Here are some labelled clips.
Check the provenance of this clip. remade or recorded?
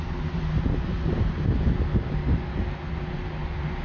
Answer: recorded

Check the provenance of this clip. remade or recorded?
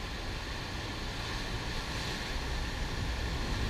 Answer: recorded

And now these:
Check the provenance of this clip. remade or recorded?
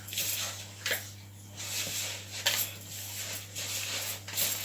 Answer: recorded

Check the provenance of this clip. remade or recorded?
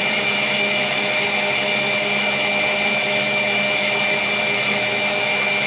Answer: remade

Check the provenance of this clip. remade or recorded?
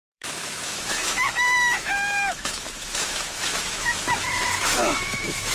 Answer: remade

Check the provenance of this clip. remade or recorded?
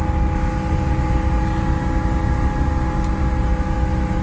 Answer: recorded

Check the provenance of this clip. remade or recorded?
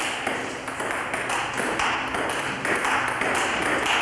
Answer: recorded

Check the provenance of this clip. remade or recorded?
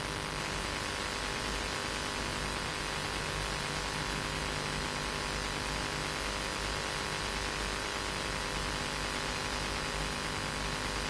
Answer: recorded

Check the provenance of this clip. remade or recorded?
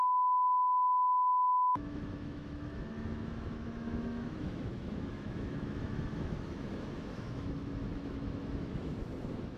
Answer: remade